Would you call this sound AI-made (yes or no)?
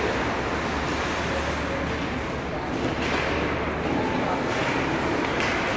no